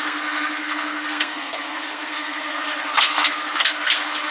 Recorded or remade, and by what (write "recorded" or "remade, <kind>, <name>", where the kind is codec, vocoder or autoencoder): remade, codec, SNAC